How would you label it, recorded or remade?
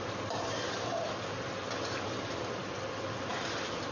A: recorded